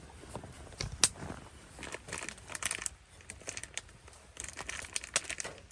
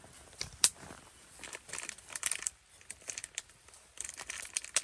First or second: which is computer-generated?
second